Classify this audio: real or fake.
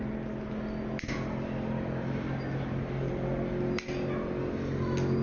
real